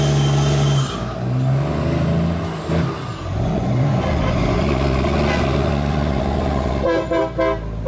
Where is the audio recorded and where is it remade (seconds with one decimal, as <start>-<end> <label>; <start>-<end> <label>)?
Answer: 0.0-3.2 recorded; 3.2-7.2 remade; 7.2-7.9 recorded